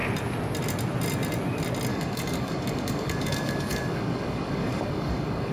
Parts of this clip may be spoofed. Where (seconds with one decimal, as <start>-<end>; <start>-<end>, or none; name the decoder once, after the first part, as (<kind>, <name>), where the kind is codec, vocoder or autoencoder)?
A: 1.9-5.5 (codec, DAC)